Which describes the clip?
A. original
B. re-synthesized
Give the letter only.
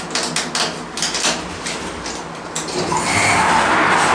A